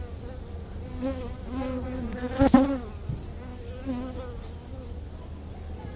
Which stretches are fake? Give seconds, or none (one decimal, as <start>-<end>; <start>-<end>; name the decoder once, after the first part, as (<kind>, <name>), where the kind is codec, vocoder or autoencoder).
none